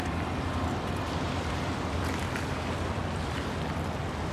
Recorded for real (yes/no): yes